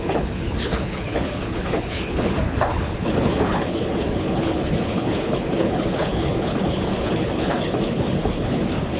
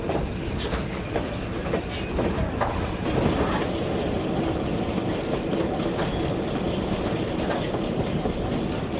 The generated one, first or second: first